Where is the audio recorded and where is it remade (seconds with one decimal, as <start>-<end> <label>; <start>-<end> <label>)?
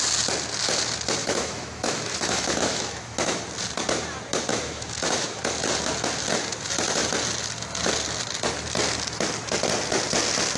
0.0-1.2 recorded; 1.2-3.4 remade; 3.4-4.5 recorded; 4.5-5.4 remade; 5.4-10.6 recorded